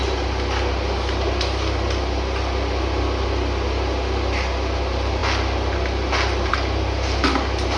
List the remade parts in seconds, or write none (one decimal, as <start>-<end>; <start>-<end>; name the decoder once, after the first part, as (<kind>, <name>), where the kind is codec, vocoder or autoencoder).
none